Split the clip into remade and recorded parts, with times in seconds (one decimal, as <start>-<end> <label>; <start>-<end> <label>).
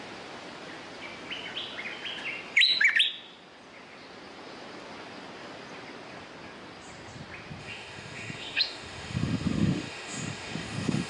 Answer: 0.0-7.6 recorded; 7.6-11.1 remade